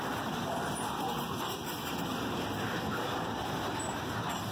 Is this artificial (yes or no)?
no